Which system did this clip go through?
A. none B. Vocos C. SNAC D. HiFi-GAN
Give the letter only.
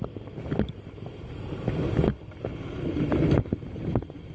A